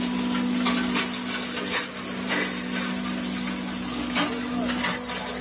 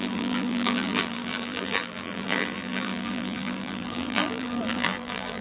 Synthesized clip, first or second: second